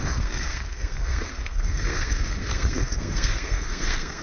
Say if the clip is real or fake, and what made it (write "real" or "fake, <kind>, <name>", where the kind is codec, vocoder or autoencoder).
fake, codec, SNAC